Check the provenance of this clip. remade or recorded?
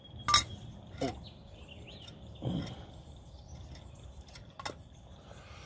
recorded